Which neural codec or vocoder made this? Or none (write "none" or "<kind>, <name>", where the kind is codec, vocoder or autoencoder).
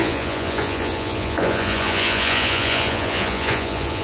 vocoder, Vocos